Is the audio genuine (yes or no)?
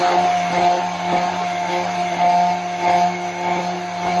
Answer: yes